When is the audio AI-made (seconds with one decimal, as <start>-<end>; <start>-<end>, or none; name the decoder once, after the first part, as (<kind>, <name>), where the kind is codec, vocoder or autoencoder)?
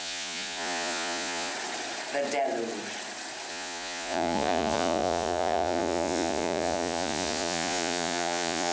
0.0-1.5 (vocoder, Vocos); 3.5-8.7